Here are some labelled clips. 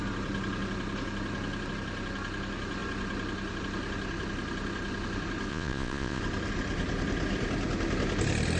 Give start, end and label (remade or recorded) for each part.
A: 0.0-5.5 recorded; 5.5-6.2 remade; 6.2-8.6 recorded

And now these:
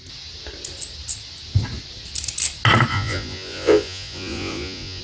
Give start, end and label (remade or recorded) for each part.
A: 0.0-2.9 recorded; 2.9-5.0 remade